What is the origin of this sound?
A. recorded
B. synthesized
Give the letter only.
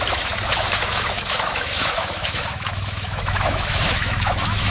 B